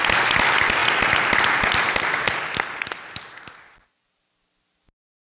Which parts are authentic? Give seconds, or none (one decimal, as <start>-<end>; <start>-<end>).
0.0-5.3